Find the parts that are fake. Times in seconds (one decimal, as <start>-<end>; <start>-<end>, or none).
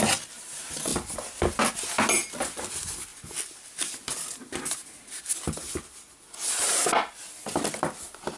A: none